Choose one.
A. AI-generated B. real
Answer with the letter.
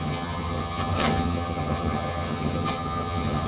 A